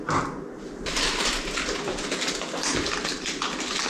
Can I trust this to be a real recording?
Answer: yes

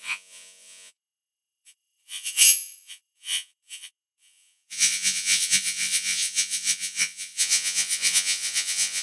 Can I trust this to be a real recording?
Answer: no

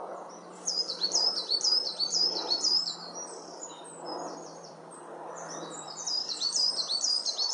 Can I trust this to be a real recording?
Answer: no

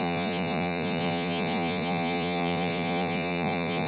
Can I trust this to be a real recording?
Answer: no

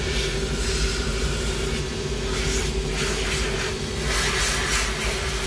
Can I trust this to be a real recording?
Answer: yes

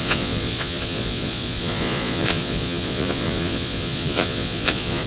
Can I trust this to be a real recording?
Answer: no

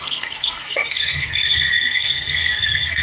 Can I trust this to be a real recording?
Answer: no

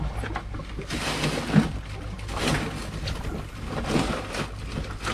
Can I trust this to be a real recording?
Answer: yes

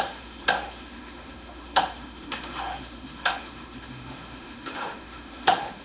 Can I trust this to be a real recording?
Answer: no